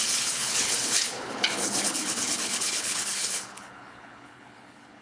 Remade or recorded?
remade